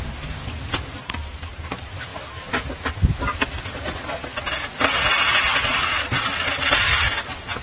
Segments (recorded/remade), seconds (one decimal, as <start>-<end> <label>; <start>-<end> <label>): 0.0-2.1 remade; 2.1-5.8 recorded; 5.8-7.6 remade